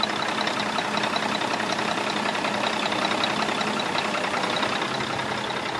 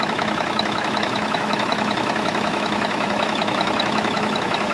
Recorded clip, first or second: first